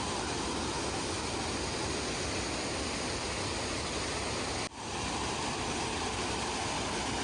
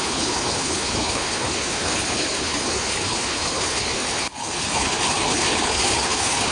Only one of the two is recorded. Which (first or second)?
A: first